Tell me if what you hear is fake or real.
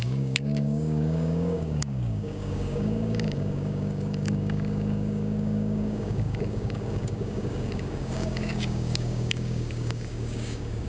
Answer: fake